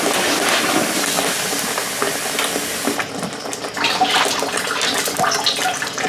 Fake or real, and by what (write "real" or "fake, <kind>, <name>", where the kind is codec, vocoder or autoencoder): real